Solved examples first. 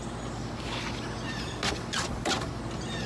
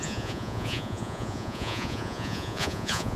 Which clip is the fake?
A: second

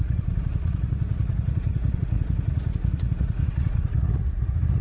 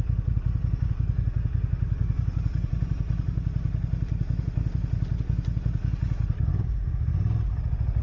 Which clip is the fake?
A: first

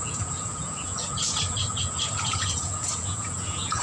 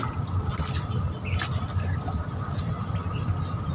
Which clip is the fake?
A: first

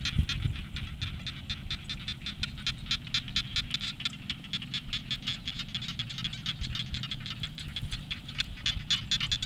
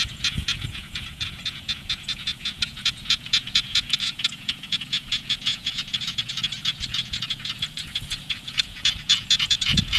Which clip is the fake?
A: second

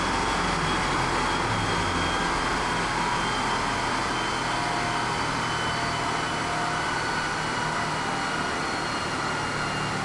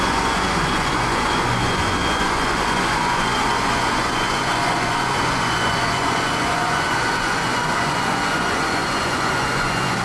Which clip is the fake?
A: second